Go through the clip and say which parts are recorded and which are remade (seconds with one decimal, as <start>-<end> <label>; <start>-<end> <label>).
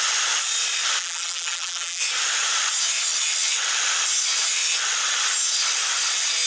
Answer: 0.0-1.0 recorded; 1.0-2.0 remade; 2.0-6.5 recorded